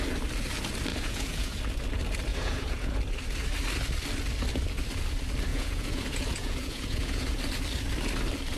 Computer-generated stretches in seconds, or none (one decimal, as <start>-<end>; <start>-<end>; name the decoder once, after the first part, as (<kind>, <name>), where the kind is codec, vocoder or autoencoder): 0.9-1.6 (vocoder, Vocos); 2.3-3.0; 5.5-7.4